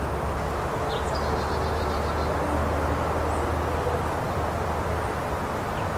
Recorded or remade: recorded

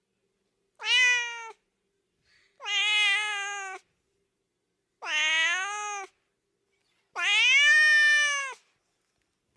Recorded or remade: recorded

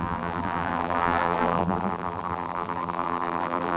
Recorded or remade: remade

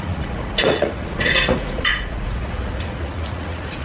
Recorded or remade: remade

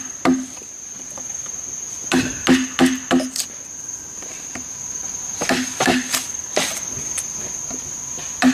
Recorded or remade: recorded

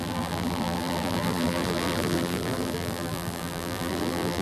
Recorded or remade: remade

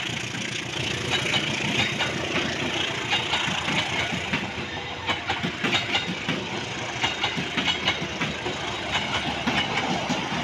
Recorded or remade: recorded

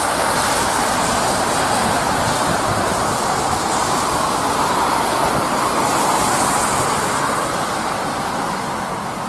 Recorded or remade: recorded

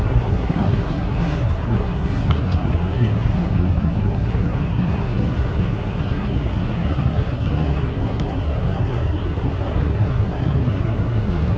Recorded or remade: remade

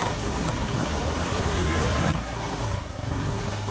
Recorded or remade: remade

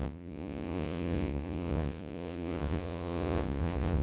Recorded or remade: remade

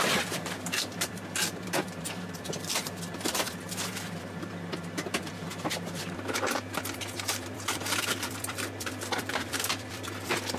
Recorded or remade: remade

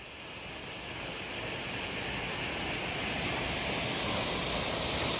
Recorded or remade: recorded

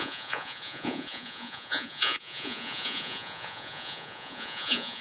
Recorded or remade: remade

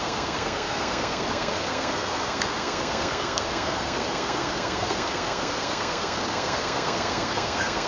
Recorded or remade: remade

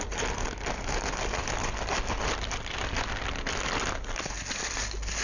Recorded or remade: recorded